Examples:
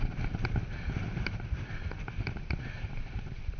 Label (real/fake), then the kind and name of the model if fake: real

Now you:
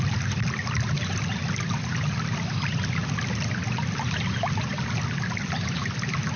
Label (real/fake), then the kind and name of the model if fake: real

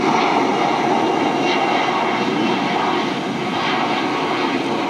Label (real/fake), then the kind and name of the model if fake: real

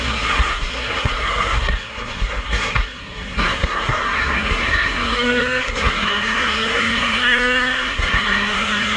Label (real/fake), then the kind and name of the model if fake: fake, codec, SNAC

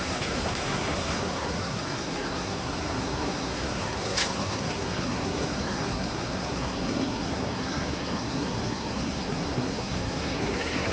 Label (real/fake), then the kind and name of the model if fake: fake, codec, SNAC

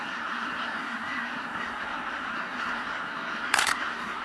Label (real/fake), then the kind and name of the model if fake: fake, codec, SNAC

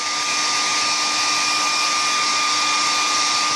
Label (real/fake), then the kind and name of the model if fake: real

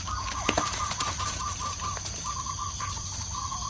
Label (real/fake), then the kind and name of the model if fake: real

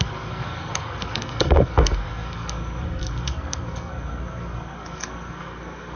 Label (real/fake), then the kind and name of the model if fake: fake, codec, SNAC